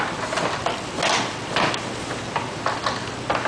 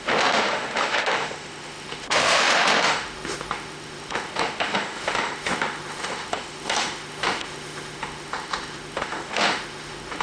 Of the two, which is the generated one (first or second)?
second